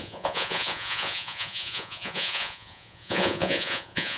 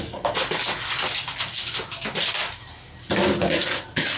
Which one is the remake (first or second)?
first